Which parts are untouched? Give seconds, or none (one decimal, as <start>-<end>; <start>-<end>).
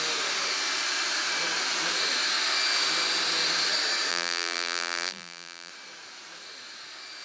0.0-4.1; 5.7-7.2